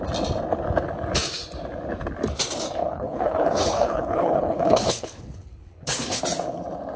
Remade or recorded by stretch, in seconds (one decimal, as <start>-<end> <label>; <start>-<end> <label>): 0.0-2.8 recorded; 2.8-6.2 remade; 6.2-7.0 recorded